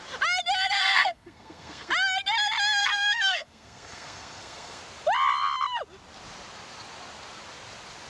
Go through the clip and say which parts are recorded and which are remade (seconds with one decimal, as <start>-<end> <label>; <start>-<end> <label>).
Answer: 0.0-0.8 recorded; 0.8-1.9 remade; 1.9-2.8 recorded; 2.8-4.8 remade; 4.8-8.1 recorded